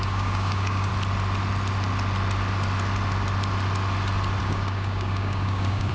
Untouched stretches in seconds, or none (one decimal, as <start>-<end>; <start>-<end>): 0.9-4.4